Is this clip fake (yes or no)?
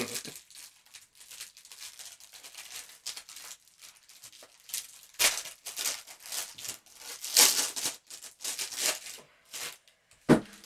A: no